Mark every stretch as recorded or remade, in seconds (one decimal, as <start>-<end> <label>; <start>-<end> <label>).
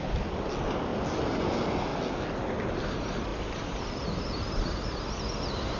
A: 0.0-0.9 recorded; 0.9-1.4 remade; 1.4-3.3 recorded; 3.3-4.2 remade; 4.2-5.8 recorded